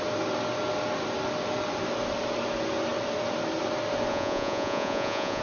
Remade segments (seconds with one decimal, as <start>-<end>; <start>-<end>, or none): 4.1-5.4